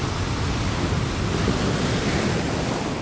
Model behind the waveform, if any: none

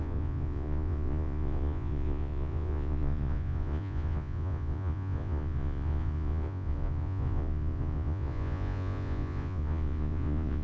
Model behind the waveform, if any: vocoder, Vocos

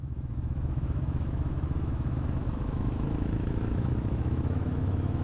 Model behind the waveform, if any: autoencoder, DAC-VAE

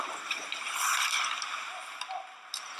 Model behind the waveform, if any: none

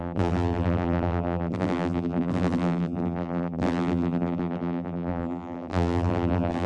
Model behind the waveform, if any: vocoder, BigVGAN v2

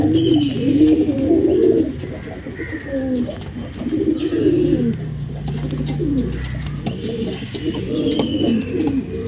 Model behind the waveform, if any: none